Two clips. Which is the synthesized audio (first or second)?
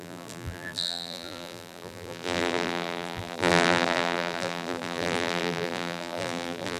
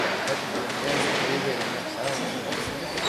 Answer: first